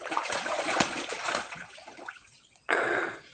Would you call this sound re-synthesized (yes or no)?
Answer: yes